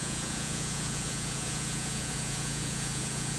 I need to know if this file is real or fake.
fake